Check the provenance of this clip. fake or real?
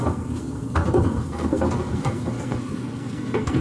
fake